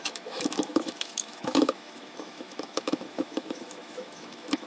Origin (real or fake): fake